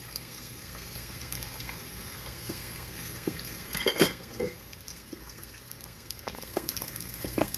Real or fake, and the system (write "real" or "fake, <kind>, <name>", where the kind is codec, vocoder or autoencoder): fake, codec, SNAC